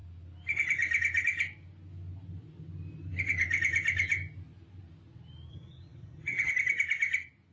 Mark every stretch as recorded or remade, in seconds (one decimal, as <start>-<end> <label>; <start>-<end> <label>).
0.0-5.5 recorded; 5.5-6.5 remade; 6.5-7.5 recorded